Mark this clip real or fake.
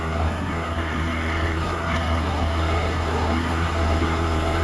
fake